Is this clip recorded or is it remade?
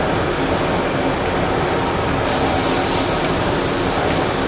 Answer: recorded